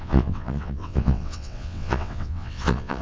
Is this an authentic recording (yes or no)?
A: no